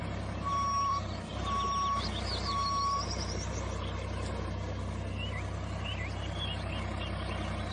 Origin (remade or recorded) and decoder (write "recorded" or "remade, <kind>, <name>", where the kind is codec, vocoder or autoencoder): recorded